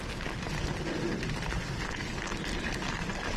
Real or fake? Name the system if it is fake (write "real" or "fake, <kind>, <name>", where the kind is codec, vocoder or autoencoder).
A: real